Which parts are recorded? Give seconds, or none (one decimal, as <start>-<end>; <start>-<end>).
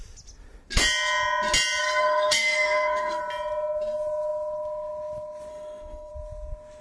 0.0-1.8; 3.2-5.5; 6.1-6.8